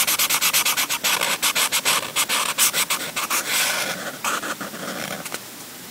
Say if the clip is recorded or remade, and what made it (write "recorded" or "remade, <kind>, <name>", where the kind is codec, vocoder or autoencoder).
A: recorded